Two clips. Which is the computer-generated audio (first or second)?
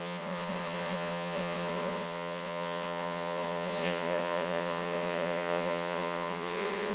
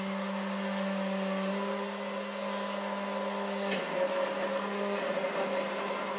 first